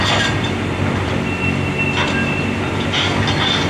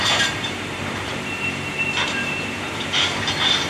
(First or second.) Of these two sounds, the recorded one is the first